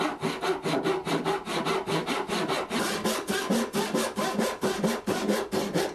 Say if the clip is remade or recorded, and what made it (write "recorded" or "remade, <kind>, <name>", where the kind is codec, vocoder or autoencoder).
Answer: recorded